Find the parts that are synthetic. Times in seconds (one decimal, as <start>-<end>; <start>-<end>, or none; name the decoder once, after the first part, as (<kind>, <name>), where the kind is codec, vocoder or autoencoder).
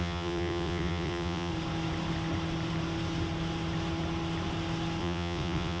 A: 0.0-1.5 (vocoder, WaveNeXt); 5.0-5.8